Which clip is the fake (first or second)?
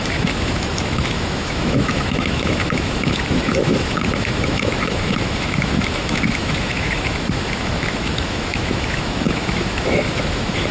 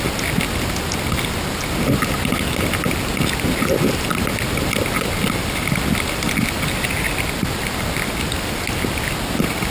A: first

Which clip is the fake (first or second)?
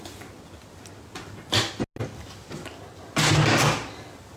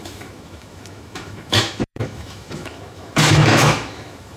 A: second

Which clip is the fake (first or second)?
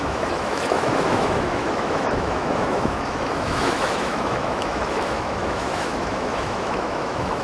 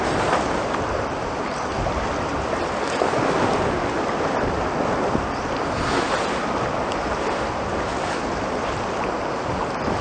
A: first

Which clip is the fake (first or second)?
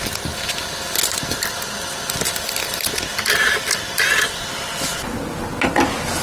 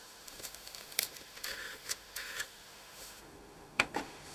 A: second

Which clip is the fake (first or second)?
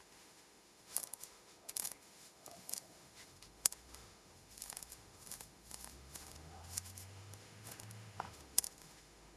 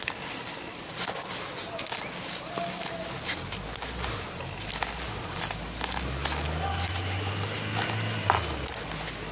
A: first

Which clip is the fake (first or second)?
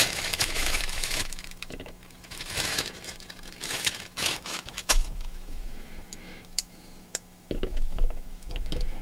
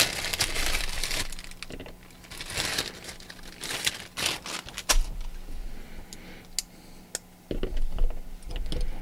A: first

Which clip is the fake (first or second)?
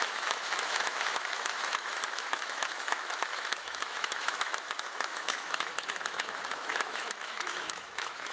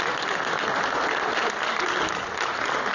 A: first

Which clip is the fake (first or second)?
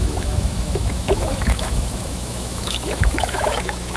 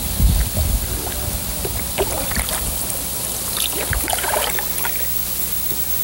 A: first